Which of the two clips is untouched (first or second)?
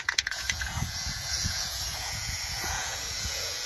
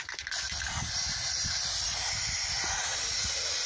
second